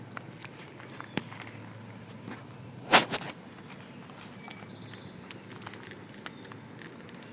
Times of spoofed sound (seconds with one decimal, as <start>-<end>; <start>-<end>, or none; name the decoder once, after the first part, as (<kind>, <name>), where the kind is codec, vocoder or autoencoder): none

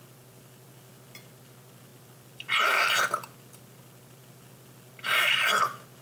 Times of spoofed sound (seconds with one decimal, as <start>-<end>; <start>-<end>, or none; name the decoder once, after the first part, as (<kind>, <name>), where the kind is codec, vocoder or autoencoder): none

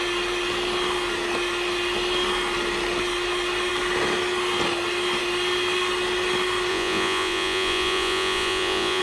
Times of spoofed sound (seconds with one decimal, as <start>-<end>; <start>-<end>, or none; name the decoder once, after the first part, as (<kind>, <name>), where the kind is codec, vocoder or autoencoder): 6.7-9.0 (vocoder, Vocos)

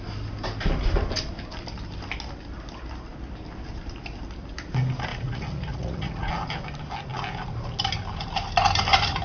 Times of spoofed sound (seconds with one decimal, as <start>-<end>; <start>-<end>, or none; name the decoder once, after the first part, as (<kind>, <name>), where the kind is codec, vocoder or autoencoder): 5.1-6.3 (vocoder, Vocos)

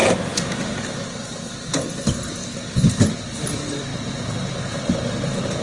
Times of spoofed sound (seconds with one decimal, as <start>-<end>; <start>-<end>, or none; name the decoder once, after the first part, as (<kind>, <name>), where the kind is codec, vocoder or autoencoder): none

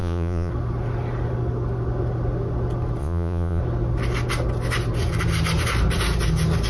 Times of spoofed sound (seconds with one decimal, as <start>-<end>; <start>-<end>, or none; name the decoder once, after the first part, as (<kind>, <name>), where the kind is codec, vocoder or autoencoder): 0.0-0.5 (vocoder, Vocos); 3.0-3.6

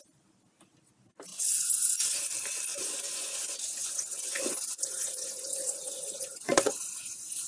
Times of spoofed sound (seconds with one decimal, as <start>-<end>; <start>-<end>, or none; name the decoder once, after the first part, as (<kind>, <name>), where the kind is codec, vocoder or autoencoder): 1.3-2.3 (vocoder, Vocos); 2.7-7.5